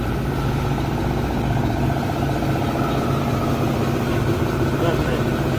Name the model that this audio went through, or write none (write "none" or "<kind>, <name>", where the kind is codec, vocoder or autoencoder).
none